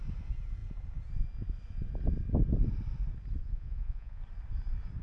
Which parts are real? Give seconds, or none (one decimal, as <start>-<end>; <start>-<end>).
0.0-3.4; 4.2-5.0